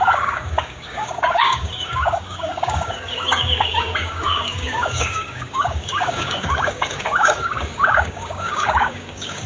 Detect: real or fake fake